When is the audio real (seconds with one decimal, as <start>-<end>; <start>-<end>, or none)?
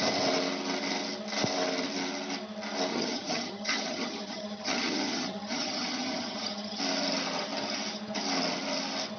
0.0-2.9; 6.8-9.2